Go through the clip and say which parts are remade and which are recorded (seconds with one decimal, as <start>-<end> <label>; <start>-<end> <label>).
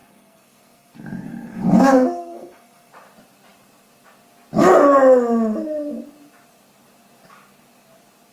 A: 0.0-2.9 remade; 2.9-8.3 recorded